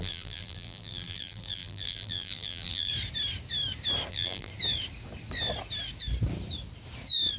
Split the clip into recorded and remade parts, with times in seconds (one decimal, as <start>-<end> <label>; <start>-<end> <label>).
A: 0.0-2.9 remade; 2.9-4.1 recorded; 4.1-4.5 remade; 4.5-7.4 recorded

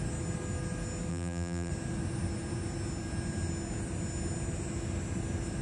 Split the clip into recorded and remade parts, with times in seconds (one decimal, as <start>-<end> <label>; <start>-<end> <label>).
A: 0.0-1.1 recorded; 1.1-1.7 remade; 1.7-5.6 recorded

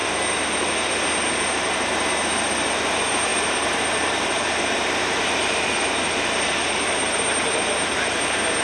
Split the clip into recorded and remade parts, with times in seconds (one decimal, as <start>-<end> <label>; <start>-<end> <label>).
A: 0.0-1.4 recorded; 1.4-8.6 remade